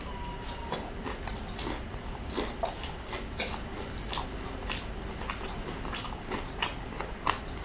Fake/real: real